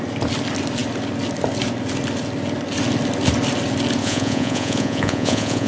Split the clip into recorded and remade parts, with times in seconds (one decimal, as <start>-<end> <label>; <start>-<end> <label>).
0.0-4.0 recorded; 4.0-5.7 remade